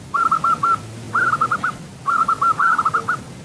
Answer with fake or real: real